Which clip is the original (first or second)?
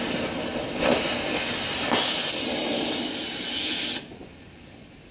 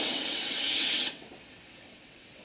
first